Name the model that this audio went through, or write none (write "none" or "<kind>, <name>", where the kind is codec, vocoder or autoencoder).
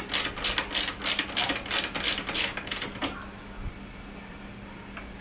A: none